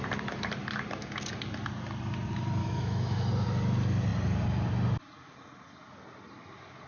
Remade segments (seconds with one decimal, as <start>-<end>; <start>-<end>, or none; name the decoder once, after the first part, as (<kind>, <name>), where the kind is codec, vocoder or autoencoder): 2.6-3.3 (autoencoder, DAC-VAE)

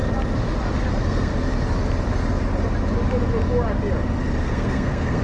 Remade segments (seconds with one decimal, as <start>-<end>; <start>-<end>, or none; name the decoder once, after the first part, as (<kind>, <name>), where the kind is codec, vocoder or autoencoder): 0.9-1.3 (codec, SNAC); 4.4-5.2

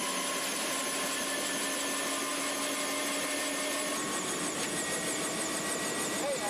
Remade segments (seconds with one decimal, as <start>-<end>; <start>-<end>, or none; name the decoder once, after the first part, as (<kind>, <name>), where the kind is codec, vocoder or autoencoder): none

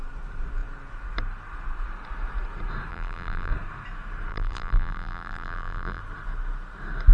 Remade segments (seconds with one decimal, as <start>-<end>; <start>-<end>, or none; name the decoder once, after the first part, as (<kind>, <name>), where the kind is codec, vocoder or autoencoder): 2.9-3.5 (vocoder, BigVGAN v2); 4.3-6.0

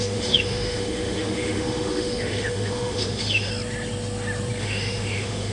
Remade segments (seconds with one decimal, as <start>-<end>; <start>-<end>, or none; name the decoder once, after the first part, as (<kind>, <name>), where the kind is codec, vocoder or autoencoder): 0.0-3.5 (autoencoder, DAC-VAE); 4.6-5.5